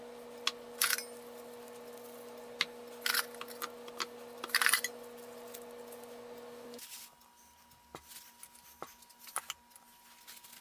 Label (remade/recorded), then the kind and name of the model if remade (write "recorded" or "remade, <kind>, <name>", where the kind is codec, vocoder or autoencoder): recorded